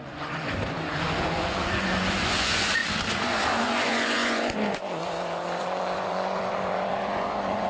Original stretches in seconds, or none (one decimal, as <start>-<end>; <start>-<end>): 2.8-3.6